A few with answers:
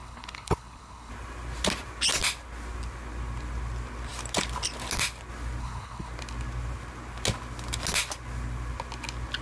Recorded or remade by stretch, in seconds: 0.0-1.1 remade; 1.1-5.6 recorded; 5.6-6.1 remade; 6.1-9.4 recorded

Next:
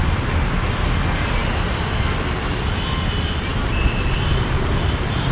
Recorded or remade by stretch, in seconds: 0.0-5.3 recorded

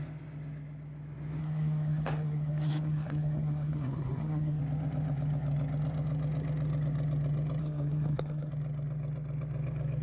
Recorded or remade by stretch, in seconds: 0.0-1.4 recorded; 1.4-4.6 remade; 4.6-7.6 recorded; 7.6-8.5 remade; 8.5-10.0 recorded

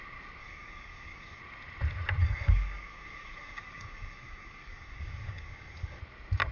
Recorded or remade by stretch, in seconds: 0.0-0.4 recorded; 0.4-1.4 remade; 1.4-2.2 recorded; 2.2-6.0 remade; 6.0-6.5 recorded

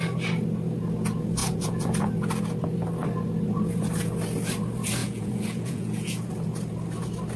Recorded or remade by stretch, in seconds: 0.0-1.4 recorded; 1.4-2.1 remade; 2.1-5.0 recorded; 5.0-6.3 remade; 6.3-7.4 recorded

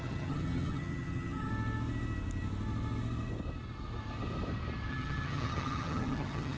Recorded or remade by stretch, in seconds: 0.0-1.5 remade; 1.5-4.9 recorded; 4.9-6.6 remade

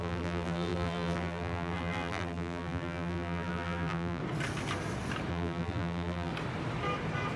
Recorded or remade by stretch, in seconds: 0.0-4.2 remade; 4.2-5.3 recorded; 5.3-6.3 remade; 6.3-7.4 recorded

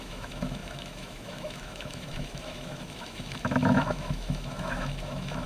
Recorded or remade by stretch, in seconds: 0.0-5.5 remade